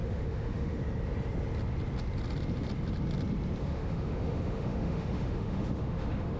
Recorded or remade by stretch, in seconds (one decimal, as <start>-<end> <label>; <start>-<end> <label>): 0.0-0.8 remade; 0.8-3.6 recorded; 3.6-6.4 remade